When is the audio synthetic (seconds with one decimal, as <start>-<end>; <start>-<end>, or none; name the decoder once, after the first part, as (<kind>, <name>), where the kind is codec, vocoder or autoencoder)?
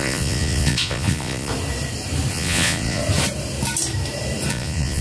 0.0-1.5 (vocoder, Vocos); 2.3-3.0; 4.5-5.0